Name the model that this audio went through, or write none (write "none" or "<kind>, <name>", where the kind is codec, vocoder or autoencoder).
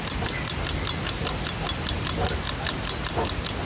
none